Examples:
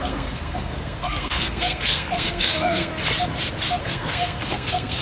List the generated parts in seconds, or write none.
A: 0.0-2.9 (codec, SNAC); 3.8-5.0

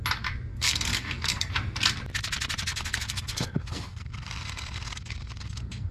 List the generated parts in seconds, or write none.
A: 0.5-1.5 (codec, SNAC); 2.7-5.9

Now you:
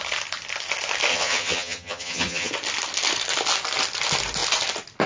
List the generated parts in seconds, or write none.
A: 1.1-2.5 (vocoder, HiFi-GAN)